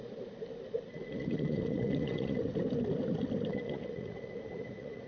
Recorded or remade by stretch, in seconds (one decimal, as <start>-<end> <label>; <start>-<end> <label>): 0.0-0.9 recorded; 0.9-2.4 remade; 2.4-3.5 recorded; 3.5-5.1 remade

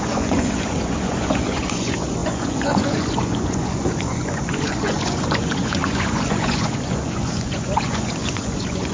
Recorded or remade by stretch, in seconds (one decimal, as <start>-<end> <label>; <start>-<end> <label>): 0.0-8.9 remade